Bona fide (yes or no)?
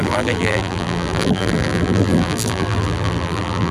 no